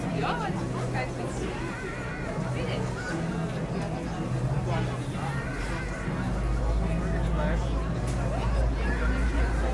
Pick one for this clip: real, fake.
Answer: real